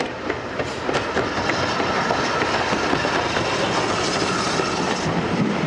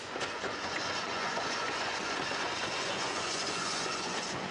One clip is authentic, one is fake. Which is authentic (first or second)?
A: first